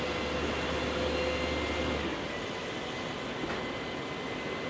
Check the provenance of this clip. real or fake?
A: real